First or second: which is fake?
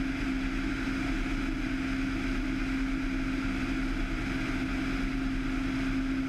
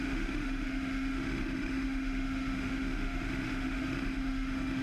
second